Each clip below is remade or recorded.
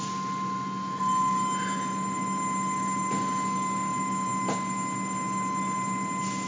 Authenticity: recorded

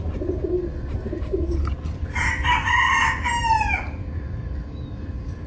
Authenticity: recorded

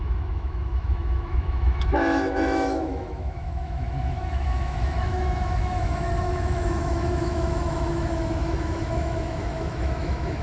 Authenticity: remade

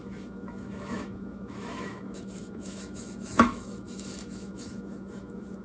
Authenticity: remade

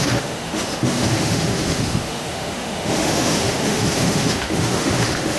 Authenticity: remade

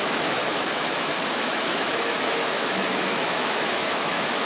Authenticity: remade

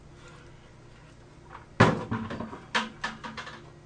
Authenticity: recorded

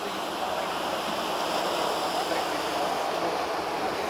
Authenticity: recorded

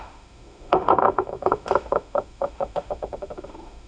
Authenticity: remade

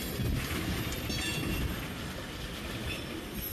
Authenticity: recorded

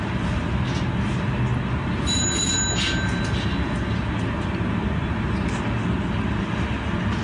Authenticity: recorded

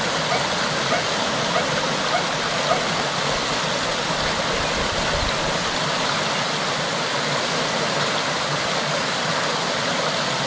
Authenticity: recorded